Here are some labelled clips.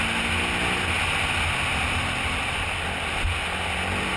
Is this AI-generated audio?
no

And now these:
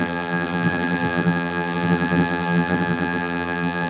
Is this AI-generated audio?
yes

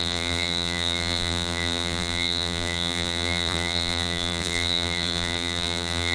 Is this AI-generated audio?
yes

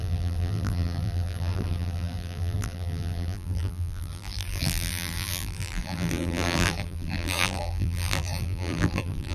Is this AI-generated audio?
yes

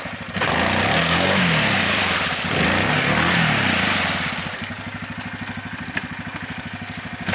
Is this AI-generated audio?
no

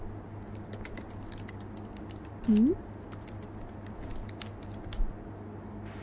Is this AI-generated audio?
no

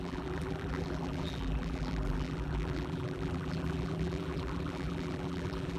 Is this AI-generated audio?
yes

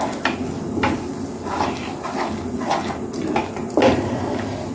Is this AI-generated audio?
no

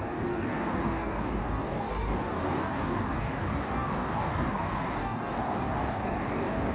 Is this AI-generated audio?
yes